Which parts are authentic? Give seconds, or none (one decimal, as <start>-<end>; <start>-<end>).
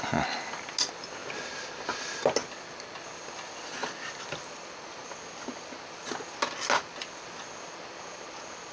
0.0-8.7